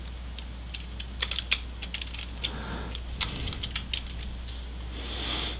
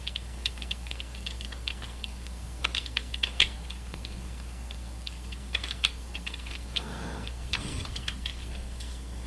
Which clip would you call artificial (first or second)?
second